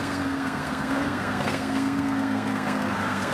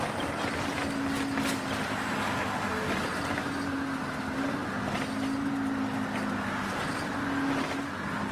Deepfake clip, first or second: first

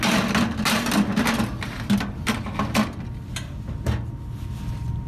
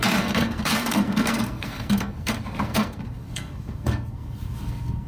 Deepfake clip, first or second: second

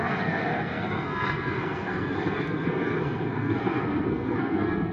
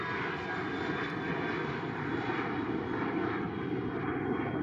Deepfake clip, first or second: first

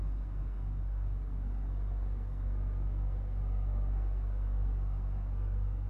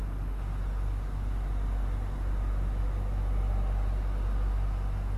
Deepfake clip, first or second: first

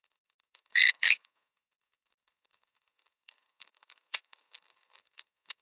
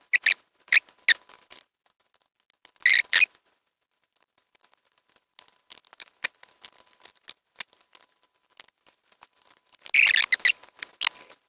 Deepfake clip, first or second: first